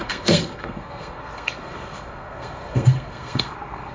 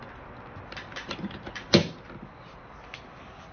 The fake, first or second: first